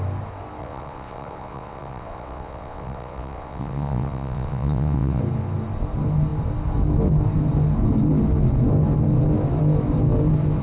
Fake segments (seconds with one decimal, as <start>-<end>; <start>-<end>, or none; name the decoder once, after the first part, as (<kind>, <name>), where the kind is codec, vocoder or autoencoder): 0.6-5.2 (vocoder, WaveNeXt)